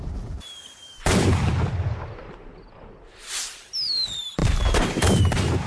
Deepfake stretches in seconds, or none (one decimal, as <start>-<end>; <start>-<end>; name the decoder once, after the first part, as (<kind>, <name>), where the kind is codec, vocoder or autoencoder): none